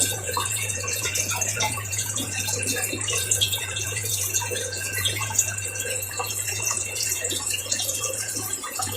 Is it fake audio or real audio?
fake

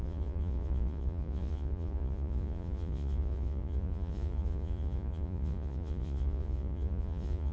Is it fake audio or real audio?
fake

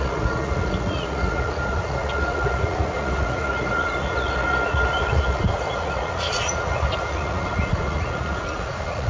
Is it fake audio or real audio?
fake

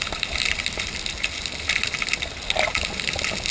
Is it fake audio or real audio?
real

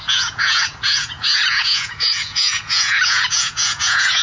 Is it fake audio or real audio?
fake